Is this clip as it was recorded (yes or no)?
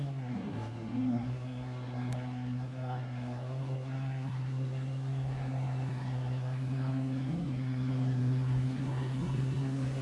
no